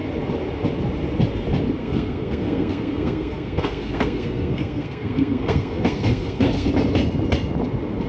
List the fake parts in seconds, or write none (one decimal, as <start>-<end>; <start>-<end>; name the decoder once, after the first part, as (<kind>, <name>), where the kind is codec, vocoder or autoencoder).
1.8-6.7 (codec, SNAC)